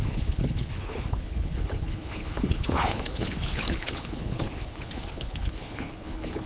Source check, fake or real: fake